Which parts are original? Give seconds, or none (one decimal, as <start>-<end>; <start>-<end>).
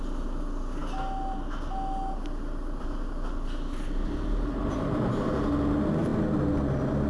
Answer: 0.0-7.1